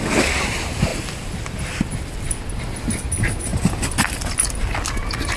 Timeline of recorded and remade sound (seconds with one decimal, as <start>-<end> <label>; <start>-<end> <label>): 0.0-5.4 recorded